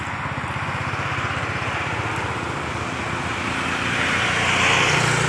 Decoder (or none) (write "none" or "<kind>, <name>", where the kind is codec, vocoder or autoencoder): none